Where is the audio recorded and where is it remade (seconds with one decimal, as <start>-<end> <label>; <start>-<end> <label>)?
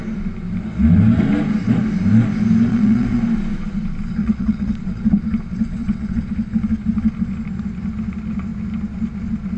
0.0-2.7 recorded; 2.7-3.2 remade; 3.2-4.2 recorded; 4.2-5.1 remade; 5.1-5.5 recorded; 5.5-6.2 remade; 6.2-9.6 recorded